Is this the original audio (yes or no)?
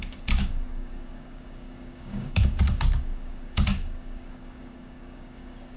no